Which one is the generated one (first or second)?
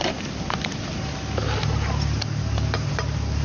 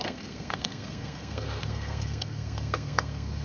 second